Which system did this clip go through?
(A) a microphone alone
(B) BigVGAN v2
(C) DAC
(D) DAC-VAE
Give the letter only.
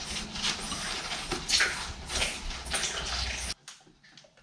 A